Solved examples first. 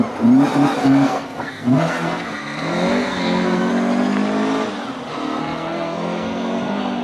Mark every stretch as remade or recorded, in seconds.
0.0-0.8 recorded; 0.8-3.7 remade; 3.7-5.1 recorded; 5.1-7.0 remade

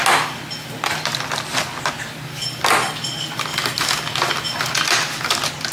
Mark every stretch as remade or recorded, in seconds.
0.0-5.7 recorded

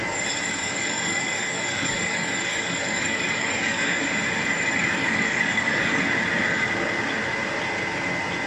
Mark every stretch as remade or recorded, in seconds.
0.0-0.6 recorded; 0.6-4.0 remade; 4.0-5.0 recorded; 5.0-6.0 remade; 6.0-8.5 recorded

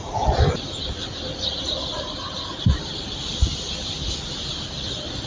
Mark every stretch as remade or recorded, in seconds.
0.0-5.3 recorded

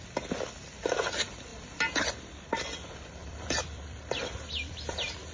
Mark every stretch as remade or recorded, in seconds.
0.0-1.5 recorded; 1.5-2.5 remade; 2.5-3.2 recorded; 3.2-5.3 remade

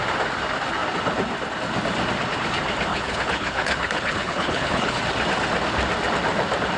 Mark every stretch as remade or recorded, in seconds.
0.0-2.9 recorded; 2.9-5.0 remade; 5.0-6.8 recorded

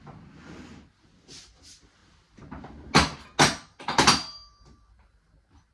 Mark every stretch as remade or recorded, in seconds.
0.0-5.7 recorded